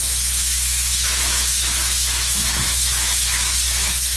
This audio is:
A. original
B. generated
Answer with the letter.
B